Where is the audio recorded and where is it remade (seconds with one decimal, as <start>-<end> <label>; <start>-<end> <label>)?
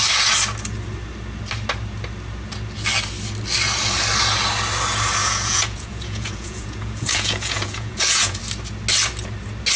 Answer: 0.0-5.2 recorded; 5.2-8.4 remade; 8.4-9.8 recorded